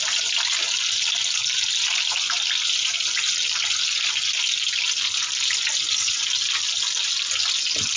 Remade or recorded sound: recorded